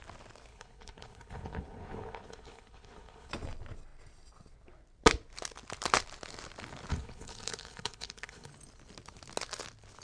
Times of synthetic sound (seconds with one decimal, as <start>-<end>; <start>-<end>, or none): 0.5-3.3; 6.9-8.5